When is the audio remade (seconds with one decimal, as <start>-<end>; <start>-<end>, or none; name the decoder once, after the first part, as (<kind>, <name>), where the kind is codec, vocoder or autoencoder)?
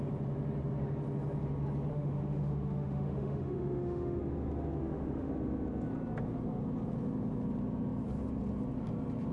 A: 1.9-4.2 (autoencoder, DAC-VAE); 4.8-5.3